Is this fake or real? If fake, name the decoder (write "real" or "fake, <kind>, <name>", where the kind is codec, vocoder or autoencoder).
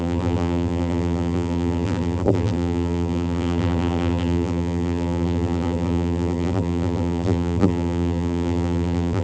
fake, vocoder, BigVGAN v2